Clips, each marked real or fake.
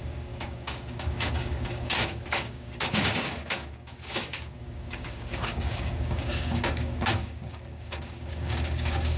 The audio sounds fake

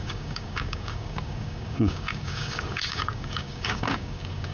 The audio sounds fake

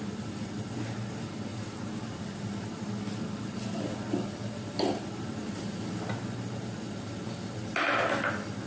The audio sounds real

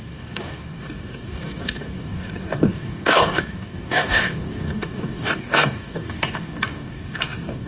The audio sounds fake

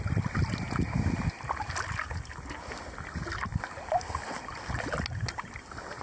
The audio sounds real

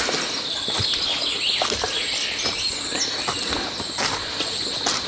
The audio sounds real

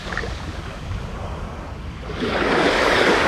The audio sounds fake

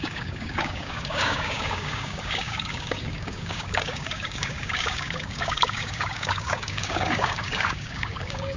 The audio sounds fake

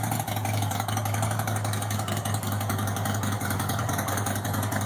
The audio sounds fake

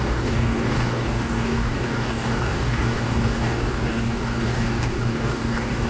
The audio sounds fake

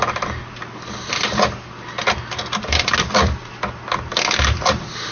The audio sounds real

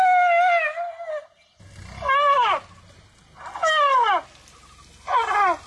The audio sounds real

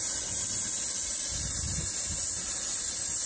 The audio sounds real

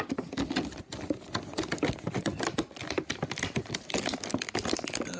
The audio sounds real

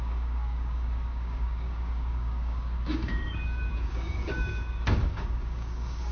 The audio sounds fake